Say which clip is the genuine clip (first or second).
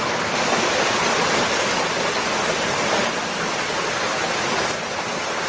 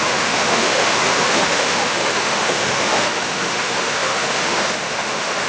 first